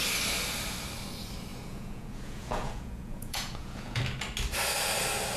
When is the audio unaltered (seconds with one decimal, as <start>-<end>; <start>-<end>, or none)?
0.0-1.5; 4.0-5.4